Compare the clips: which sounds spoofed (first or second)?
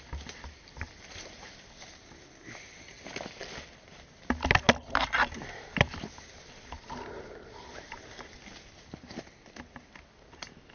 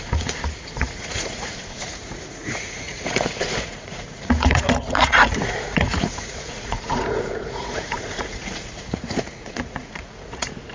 second